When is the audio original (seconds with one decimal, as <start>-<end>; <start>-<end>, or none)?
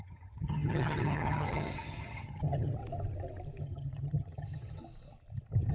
2.8-3.6; 4.8-5.7